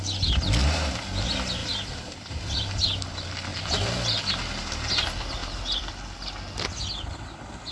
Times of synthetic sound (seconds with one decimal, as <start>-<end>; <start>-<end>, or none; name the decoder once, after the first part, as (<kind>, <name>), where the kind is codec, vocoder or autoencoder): 1.6-2.3 (vocoder, BigVGAN v2)